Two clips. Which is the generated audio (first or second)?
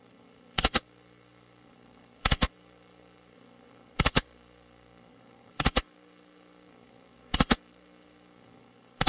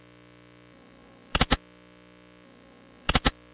first